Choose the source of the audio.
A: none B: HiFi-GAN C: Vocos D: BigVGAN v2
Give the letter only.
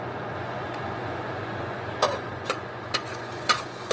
C